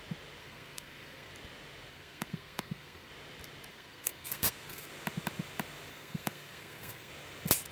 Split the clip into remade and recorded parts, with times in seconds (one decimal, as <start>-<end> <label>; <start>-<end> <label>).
0.0-0.4 recorded; 0.4-1.3 remade; 1.3-1.9 recorded; 1.9-3.1 remade; 3.1-3.7 recorded; 3.7-4.9 remade; 4.9-5.9 recorded; 5.9-7.1 remade; 7.1-7.7 recorded